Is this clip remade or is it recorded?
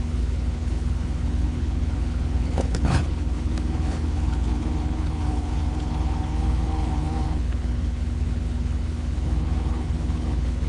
remade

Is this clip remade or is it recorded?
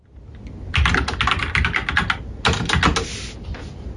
recorded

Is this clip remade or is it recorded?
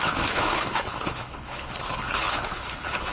remade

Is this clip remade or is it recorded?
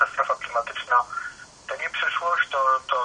recorded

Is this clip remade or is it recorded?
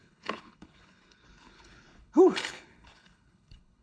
remade